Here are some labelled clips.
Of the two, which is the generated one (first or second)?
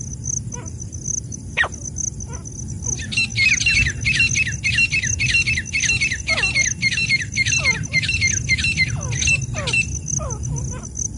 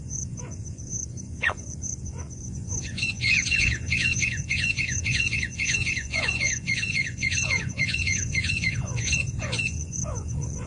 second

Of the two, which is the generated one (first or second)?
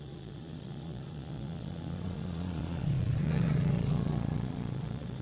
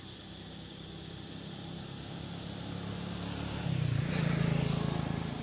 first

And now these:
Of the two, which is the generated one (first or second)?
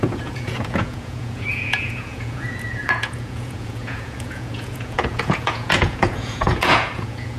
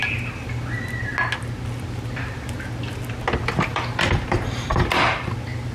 first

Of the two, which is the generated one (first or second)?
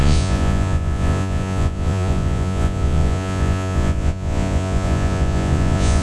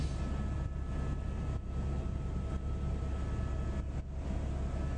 first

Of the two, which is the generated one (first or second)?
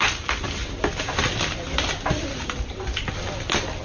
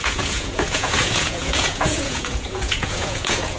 second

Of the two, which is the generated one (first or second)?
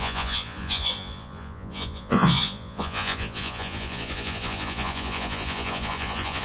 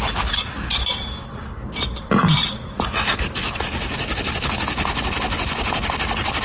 first